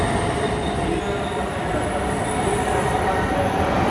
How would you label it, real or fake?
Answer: real